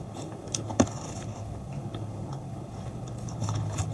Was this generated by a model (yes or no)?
yes